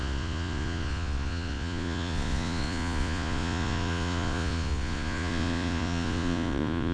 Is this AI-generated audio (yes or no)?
yes